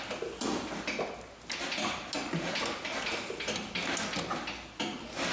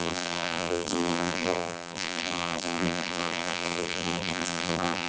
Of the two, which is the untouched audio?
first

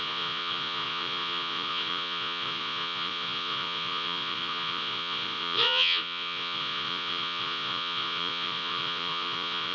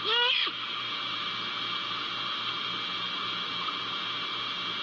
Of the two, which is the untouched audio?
second